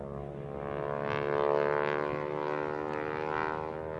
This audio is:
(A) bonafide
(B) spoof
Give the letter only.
A